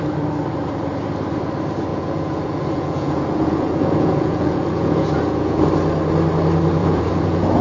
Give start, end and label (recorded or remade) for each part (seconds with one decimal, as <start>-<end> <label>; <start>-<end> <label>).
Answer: 0.0-1.9 recorded; 1.9-5.6 remade; 5.6-6.8 recorded; 6.8-7.6 remade